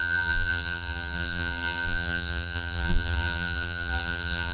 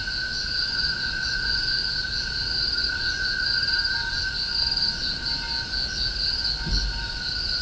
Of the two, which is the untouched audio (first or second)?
second